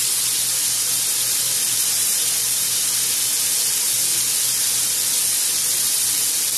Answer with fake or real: real